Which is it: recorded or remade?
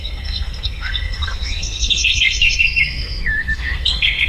remade